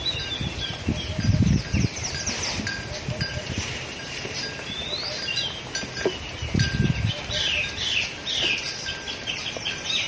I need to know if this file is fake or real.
real